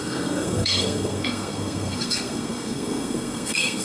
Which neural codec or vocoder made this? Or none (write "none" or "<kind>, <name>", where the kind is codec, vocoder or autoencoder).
codec, SNAC